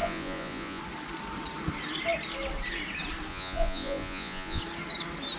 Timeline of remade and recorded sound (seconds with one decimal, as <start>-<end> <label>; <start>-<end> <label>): 0.0-0.8 remade; 0.8-3.3 recorded; 3.3-4.6 remade; 4.6-5.4 recorded

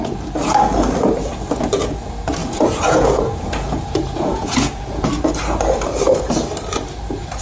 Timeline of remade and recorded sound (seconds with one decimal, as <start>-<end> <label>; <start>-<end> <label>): 0.0-2.4 recorded; 2.4-5.1 remade; 5.1-7.4 recorded